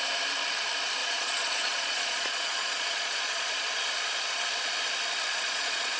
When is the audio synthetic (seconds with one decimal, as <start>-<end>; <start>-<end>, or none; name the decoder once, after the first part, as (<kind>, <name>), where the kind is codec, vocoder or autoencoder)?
1.0-3.8 (vocoder, Vocos); 5.3-6.0